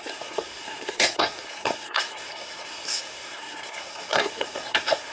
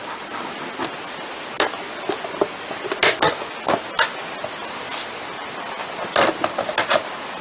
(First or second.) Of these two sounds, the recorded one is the second